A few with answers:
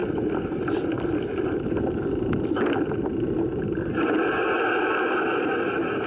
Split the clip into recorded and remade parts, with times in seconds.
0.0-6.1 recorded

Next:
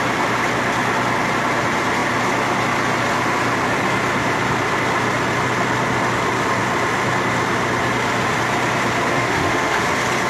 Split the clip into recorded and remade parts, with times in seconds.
0.0-9.1 recorded; 9.1-9.8 remade; 9.8-10.3 recorded

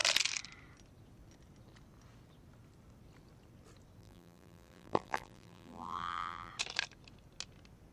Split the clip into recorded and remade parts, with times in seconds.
0.0-4.0 recorded; 4.0-6.5 remade; 6.5-7.9 recorded

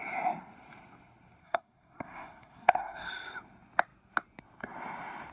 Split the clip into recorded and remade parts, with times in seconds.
0.0-1.4 recorded; 1.4-3.1 remade; 3.1-5.3 recorded

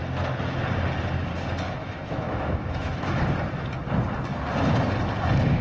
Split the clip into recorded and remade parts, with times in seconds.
0.0-1.8 recorded; 1.8-3.2 remade; 3.2-5.6 recorded